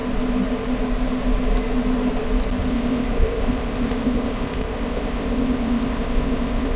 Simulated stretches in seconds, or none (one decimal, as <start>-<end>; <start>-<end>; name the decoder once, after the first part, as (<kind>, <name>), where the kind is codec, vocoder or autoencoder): 2.7-6.8 (codec, ZipCodec)